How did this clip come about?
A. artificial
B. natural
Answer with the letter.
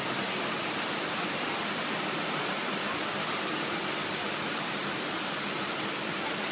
B